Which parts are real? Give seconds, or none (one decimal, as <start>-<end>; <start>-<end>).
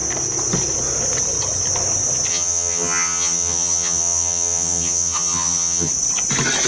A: 0.0-2.3; 5.9-6.7